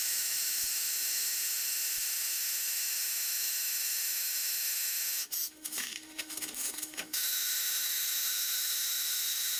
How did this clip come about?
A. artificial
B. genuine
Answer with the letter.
A